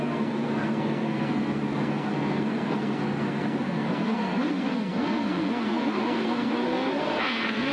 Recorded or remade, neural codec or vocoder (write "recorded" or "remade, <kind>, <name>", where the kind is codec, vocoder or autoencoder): remade, codec, SNAC